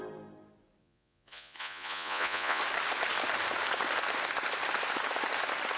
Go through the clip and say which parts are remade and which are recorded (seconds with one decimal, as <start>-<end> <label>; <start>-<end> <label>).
0.0-0.8 recorded; 0.8-2.6 remade; 2.6-5.8 recorded

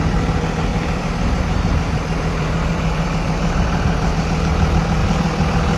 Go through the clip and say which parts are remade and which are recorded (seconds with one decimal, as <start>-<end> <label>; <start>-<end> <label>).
0.0-0.7 recorded; 0.7-4.2 remade; 4.2-5.8 recorded